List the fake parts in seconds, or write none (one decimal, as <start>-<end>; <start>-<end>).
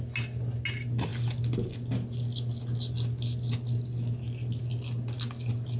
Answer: none